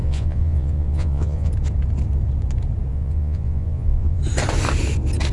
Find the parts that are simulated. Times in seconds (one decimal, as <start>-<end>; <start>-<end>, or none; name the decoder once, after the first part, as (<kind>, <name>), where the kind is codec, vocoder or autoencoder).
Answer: 0.0-1.5 (vocoder, Vocos); 2.9-4.2